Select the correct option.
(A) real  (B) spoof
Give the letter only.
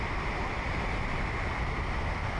A